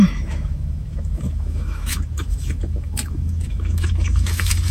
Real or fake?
fake